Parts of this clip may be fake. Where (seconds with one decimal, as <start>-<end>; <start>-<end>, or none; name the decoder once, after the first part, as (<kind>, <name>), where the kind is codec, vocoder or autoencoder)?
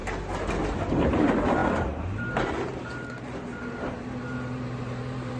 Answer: 1.1-5.4 (vocoder, BigVGAN v2)